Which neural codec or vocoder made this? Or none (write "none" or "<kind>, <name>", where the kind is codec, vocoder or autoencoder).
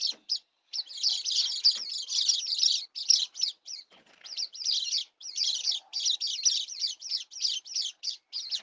none